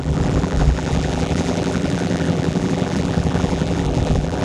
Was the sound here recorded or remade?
remade